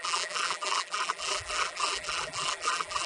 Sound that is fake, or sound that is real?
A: fake